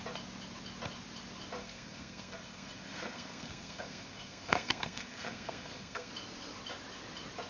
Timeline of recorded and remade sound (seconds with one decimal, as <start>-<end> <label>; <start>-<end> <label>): 0.0-1.6 recorded; 1.6-6.1 remade; 6.1-7.5 recorded